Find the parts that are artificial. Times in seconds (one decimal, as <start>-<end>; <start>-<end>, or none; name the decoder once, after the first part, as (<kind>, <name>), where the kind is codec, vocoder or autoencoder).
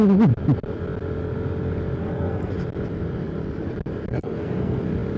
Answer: 2.0-2.5 (codec, SNAC); 4.1-4.8